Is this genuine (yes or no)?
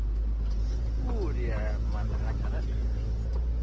yes